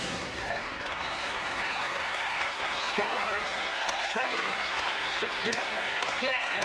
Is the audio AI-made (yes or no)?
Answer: yes